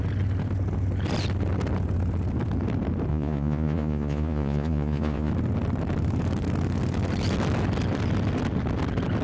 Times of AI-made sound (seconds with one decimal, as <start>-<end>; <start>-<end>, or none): 3.1-5.3